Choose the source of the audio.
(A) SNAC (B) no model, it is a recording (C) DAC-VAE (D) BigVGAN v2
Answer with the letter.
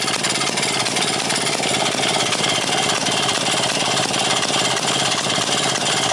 D